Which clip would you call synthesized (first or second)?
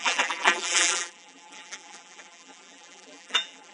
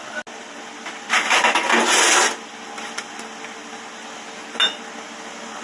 first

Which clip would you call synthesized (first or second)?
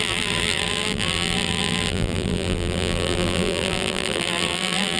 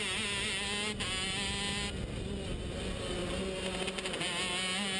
first